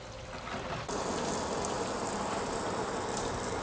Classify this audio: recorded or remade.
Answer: recorded